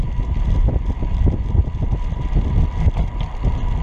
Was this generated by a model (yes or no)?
no